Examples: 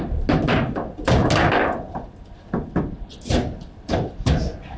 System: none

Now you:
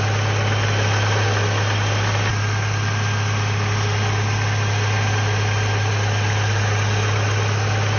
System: none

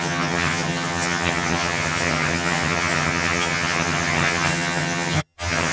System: vocoder, HiFi-GAN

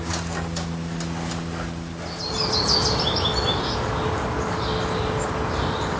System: none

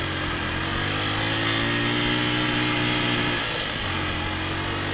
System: none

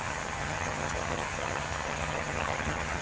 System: vocoder, HiFi-GAN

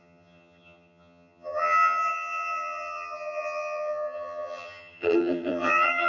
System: vocoder, HiFi-GAN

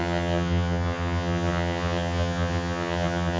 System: vocoder, HiFi-GAN